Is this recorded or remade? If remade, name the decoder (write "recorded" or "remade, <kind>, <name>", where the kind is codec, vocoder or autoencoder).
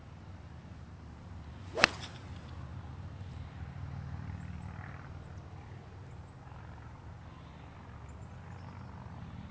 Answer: recorded